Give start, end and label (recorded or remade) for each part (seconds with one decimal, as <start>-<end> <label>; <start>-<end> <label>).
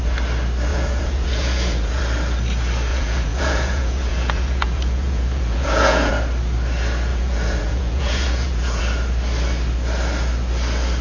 0.0-0.7 recorded; 0.7-2.0 remade; 2.0-2.9 recorded; 2.9-6.1 remade; 6.1-7.1 recorded; 7.1-8.8 remade; 8.8-11.0 recorded